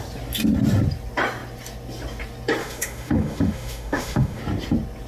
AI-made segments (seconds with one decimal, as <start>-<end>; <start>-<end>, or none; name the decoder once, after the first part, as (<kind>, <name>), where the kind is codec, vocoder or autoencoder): 2.6-4.4 (autoencoder, DAC-VAE)